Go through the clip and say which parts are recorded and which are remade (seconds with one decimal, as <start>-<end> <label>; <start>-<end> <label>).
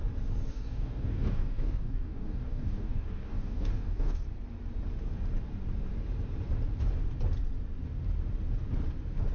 0.0-0.5 recorded; 0.5-4.2 remade; 4.2-9.3 recorded